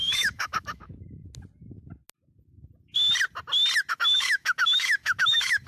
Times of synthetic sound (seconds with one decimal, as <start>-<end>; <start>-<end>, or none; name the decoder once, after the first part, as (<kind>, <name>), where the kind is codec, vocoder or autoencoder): 0.0-1.2 (autoencoder, DAC-VAE); 3.9-5.7